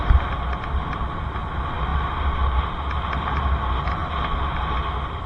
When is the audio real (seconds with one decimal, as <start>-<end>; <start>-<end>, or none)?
0.0-5.3